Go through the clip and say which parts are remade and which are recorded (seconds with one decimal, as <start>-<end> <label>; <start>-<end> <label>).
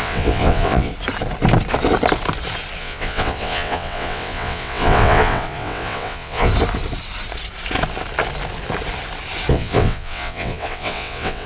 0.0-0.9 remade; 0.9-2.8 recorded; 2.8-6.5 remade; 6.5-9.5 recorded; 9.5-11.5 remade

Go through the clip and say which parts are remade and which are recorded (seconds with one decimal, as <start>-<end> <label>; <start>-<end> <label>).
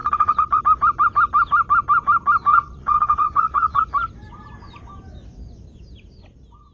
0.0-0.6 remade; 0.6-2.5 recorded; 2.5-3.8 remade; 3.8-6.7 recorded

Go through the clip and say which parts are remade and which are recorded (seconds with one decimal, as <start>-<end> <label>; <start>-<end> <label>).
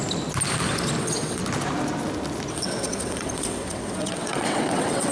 0.0-1.0 recorded; 1.0-1.4 remade; 1.4-2.5 recorded; 2.5-5.1 remade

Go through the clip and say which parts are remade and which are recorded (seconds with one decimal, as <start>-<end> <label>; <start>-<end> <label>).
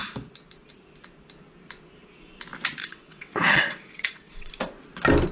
0.0-2.8 recorded; 2.8-4.5 remade; 4.5-5.3 recorded